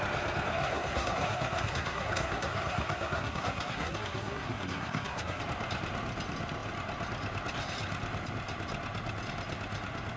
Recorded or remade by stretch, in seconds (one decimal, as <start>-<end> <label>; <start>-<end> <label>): 0.0-0.5 recorded; 0.5-5.4 remade; 5.4-10.2 recorded